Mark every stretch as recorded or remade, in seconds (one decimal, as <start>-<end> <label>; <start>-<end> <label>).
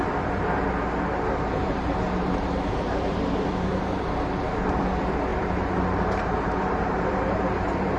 0.0-1.6 recorded; 1.6-4.1 remade; 4.1-5.3 recorded; 5.3-8.0 remade